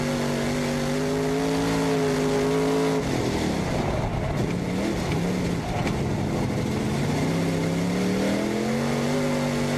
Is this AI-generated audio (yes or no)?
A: no